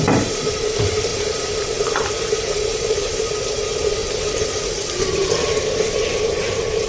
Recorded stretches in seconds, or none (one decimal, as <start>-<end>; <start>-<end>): none

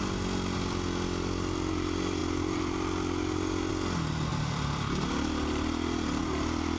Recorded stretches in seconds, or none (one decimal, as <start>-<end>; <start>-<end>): 0.0-4.3; 6.2-6.8